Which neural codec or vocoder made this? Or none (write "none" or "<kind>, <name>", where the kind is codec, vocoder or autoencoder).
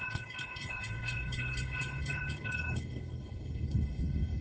codec, HILCodec